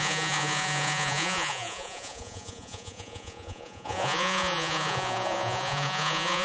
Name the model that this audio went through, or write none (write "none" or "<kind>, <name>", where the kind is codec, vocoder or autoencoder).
vocoder, Vocos